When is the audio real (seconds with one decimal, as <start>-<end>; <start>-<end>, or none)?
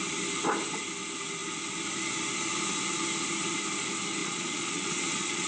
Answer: 0.0-4.2